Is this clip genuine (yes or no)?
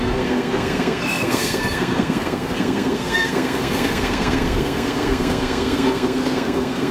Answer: no